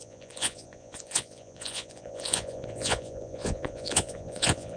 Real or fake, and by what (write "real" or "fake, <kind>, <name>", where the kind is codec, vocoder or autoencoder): fake, vocoder, Vocos